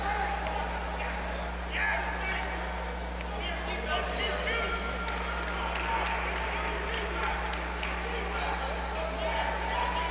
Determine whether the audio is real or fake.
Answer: real